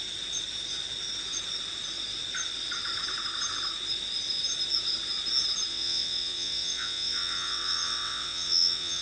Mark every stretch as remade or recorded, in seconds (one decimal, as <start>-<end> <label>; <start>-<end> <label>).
0.0-5.7 recorded; 5.7-9.0 remade